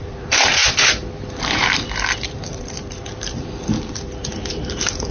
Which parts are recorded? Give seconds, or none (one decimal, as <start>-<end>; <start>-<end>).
0.6-1.1